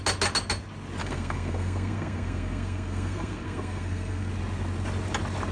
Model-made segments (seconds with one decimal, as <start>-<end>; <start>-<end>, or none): 1.0-4.3